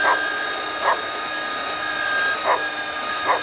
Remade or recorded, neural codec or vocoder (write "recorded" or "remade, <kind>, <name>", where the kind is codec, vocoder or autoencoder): recorded